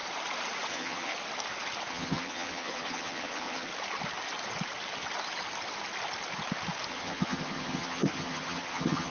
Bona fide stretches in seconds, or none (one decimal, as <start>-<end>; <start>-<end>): 0.0-0.7; 1.1-1.9; 3.7-6.9